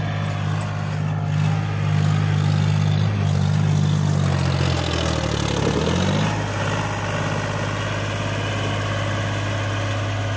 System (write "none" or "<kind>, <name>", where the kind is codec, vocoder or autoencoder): none